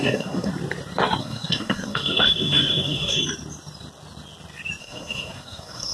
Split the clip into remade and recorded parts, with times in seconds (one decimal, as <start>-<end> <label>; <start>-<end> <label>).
0.0-0.5 remade; 0.5-1.2 recorded; 1.2-3.2 remade; 3.2-4.8 recorded; 4.8-5.9 remade

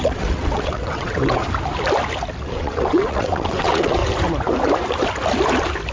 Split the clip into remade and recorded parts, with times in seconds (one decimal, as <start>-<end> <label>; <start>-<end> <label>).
0.0-1.4 remade; 1.4-2.4 recorded; 2.4-4.0 remade; 4.0-5.9 recorded

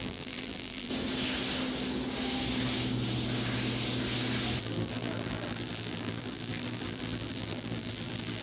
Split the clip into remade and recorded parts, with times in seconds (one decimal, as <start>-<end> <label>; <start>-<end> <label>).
0.0-0.9 remade; 0.9-4.6 recorded; 4.6-8.4 remade

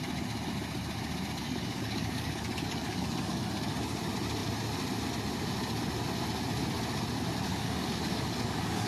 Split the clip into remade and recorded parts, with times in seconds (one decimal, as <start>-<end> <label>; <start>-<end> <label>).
0.0-1.4 recorded; 1.4-3.4 remade; 3.4-7.5 recorded; 7.5-8.9 remade